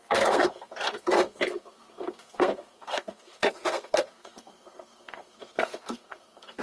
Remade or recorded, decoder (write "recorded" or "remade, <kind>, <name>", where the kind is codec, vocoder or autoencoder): remade, codec, SNAC